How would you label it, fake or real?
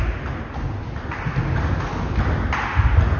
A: real